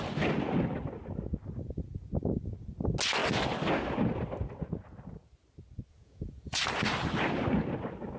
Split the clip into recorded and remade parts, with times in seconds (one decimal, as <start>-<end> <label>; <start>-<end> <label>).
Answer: 0.0-5.9 recorded; 5.9-6.6 remade; 6.6-8.2 recorded